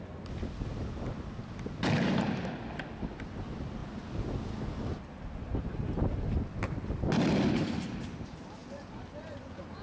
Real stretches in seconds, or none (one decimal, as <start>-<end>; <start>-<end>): 0.0-9.8